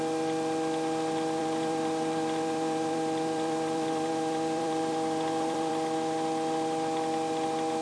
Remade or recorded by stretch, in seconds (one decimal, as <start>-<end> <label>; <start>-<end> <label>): 0.0-1.4 recorded; 1.4-5.7 remade; 5.7-7.8 recorded

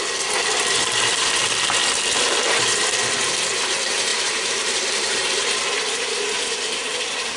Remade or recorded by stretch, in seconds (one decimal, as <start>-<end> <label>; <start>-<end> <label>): 0.0-1.8 recorded; 1.8-2.7 remade; 2.7-4.1 recorded; 4.1-5.6 remade; 5.6-7.4 recorded

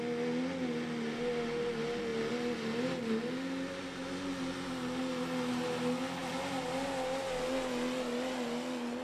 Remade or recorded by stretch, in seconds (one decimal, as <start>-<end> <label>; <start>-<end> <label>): 0.0-9.0 recorded